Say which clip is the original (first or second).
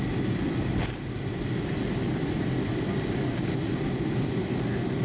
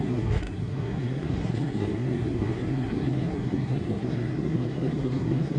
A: first